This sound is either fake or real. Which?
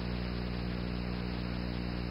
real